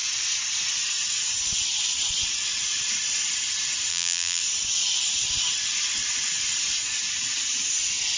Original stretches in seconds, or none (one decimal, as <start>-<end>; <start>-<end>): 0.0-3.9; 4.4-8.2